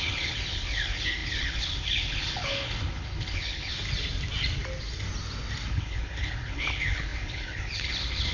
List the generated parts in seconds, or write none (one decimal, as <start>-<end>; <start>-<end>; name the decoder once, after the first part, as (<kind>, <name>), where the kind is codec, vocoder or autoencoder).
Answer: 0.0-3.7 (codec, HILCodec); 5.7-8.3